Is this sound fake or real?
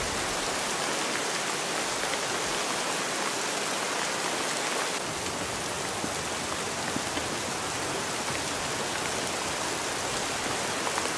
real